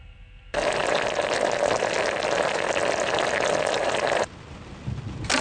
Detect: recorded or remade recorded